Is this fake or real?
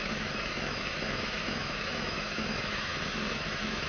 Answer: fake